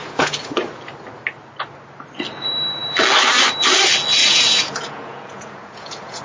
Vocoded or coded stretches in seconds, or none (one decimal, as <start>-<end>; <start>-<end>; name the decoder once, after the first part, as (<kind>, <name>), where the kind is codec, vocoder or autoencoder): 0.0-0.8 (vocoder, Vocos); 4.2-6.2